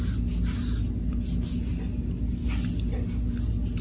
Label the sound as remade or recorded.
recorded